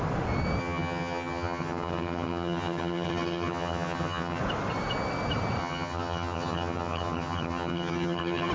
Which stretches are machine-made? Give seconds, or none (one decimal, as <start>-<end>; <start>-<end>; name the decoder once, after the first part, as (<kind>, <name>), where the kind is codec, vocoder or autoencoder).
0.6-4.4 (vocoder, HiFi-GAN); 5.6-8.5